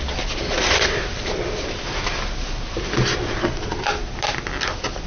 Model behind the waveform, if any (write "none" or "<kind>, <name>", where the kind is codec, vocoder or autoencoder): none